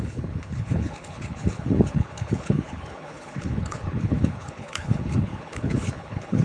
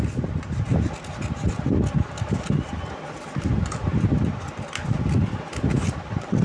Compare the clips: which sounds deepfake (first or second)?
first